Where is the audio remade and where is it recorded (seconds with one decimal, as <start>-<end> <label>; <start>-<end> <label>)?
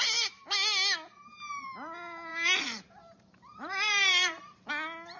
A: 0.0-2.3 recorded; 2.3-4.7 remade; 4.7-5.2 recorded